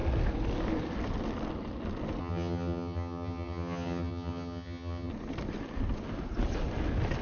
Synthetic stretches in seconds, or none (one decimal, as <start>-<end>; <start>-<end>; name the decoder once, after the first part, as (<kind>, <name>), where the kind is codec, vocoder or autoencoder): 2.2-5.1 (vocoder, HiFi-GAN)

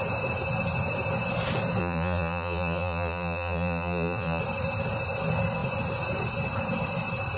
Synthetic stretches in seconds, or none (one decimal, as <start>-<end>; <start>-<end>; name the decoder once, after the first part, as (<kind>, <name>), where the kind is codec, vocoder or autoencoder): 1.8-4.4 (vocoder, Vocos)

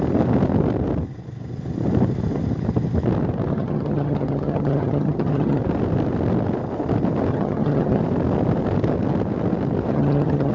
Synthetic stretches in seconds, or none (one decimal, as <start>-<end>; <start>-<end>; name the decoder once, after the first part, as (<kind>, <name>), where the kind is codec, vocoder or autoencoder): 3.5-5.6 (vocoder, HiFi-GAN); 7.3-8.0; 9.9-10.5

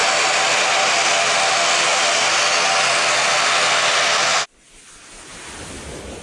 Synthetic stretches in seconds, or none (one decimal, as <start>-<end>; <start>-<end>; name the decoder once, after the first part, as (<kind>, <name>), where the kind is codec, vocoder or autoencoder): none

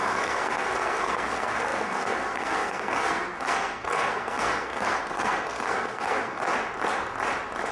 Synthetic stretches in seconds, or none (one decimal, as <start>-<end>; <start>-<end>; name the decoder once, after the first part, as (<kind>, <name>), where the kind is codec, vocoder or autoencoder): 0.0-6.5 (codec, SNAC)

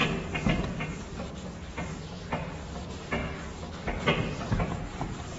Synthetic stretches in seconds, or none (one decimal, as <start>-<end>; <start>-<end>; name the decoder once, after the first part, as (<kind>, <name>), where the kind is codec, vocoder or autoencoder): none